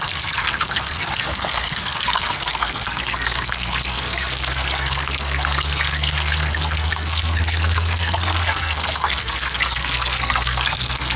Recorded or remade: remade